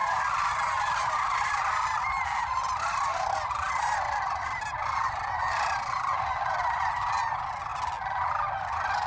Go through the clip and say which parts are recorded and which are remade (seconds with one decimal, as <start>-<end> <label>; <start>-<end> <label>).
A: 0.0-9.1 recorded